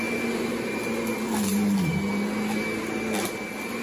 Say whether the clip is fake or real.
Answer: real